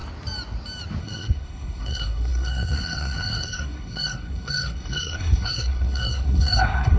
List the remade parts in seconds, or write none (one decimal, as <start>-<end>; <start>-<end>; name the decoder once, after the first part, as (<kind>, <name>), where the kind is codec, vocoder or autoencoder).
1.0-7.0 (codec, SNAC)